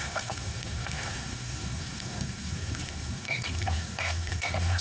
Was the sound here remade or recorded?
remade